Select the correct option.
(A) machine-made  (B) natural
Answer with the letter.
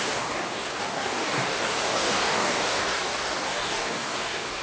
A